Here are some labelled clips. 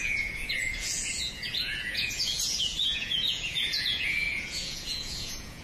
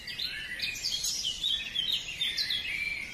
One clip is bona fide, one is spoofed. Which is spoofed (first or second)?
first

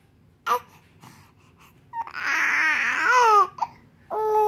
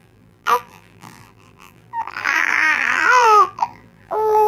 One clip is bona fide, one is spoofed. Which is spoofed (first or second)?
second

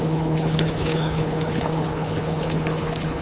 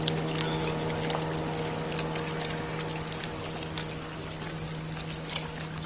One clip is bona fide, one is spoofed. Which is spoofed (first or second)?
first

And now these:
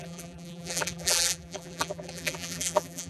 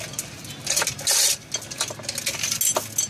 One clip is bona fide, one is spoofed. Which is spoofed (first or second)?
first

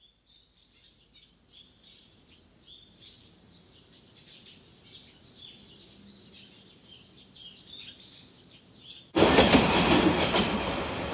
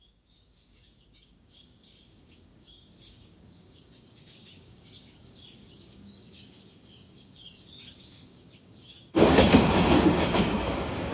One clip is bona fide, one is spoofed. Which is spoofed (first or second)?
second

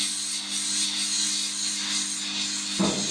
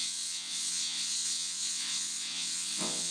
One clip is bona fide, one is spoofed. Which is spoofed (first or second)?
second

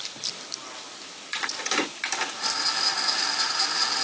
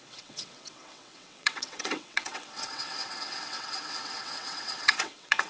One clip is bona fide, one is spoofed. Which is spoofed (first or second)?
second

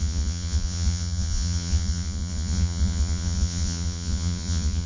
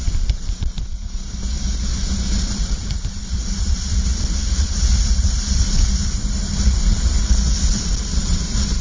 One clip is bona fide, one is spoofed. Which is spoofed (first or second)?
first